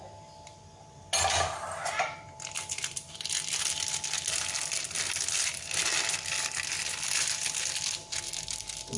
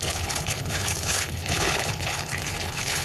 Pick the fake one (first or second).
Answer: second